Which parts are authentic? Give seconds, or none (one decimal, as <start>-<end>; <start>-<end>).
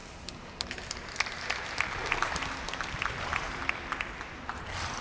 0.0-5.0